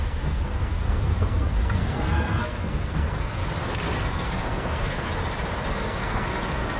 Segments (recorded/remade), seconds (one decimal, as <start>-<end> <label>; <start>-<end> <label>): 0.0-3.4 remade; 3.4-4.0 recorded; 4.0-5.1 remade; 5.1-5.7 recorded; 5.7-6.8 remade